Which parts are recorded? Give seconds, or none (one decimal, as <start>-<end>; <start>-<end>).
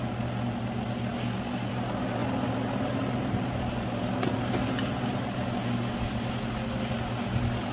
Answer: 0.0-7.7